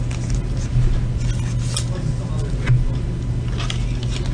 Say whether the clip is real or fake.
real